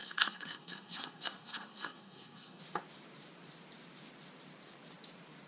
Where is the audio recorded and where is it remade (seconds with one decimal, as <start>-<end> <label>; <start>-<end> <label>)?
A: 0.0-2.6 remade; 2.6-5.5 recorded